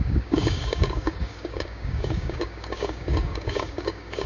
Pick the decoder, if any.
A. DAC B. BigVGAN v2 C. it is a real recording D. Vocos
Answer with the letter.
A